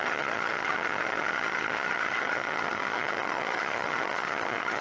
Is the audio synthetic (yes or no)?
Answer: yes